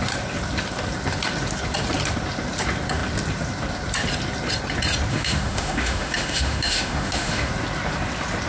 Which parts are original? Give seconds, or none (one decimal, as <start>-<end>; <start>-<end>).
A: 0.0-5.1; 7.5-8.5